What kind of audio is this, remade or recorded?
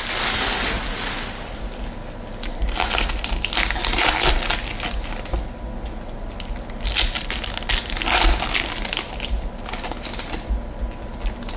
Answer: recorded